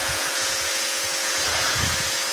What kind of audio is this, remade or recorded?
remade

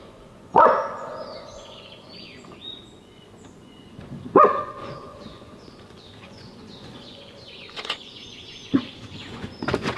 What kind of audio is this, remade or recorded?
remade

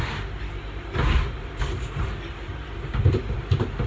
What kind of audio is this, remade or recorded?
recorded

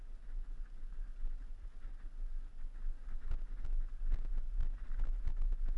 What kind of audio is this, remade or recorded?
recorded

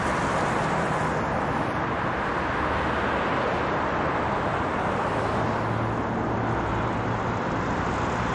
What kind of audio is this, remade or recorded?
recorded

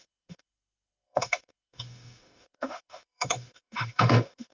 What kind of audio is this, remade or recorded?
remade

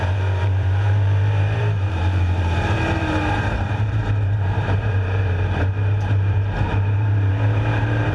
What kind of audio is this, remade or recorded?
remade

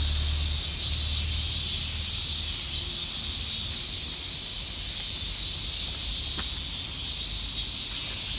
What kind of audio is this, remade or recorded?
recorded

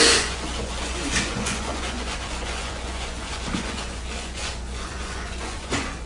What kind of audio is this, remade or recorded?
remade